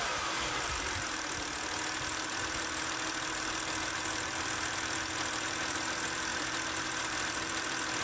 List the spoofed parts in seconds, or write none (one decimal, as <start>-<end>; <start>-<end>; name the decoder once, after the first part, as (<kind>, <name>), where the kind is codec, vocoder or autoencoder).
0.0-8.0 (vocoder, BigVGAN v2)